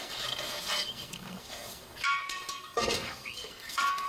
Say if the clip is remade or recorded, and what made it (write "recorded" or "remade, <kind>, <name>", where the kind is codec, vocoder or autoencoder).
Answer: remade, codec, SNAC